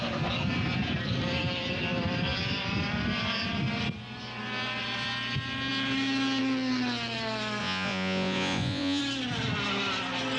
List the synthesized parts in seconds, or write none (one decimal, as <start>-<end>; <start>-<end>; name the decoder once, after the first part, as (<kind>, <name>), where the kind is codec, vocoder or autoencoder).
7.6-9.0 (vocoder, Vocos)